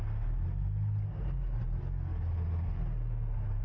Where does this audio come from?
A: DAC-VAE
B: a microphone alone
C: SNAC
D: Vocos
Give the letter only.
B